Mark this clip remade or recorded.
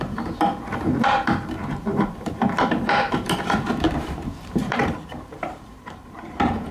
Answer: remade